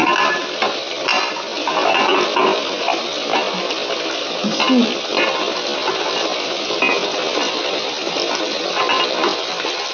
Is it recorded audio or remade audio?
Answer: recorded